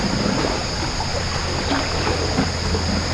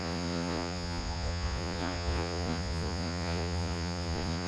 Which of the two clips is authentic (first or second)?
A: first